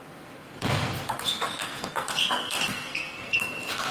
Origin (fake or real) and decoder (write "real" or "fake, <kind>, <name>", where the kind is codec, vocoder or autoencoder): fake, codec, SNAC